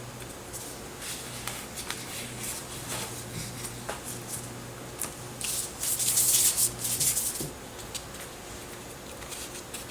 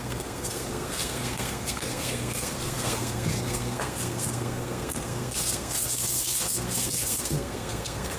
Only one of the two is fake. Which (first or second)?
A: second